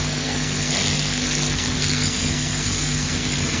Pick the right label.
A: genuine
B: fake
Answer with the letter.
B